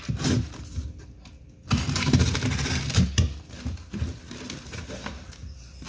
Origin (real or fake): real